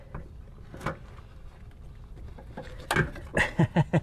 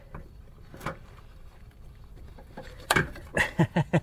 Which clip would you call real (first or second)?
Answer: first